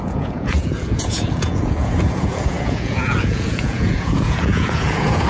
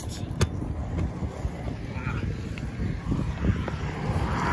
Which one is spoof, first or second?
first